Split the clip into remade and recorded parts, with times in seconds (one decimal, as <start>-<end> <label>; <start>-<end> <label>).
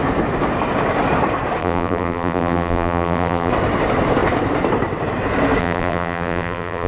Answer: 0.0-1.6 recorded; 1.6-3.5 remade; 3.5-5.6 recorded; 5.6-6.9 remade